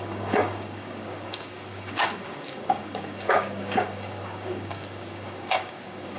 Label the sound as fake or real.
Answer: fake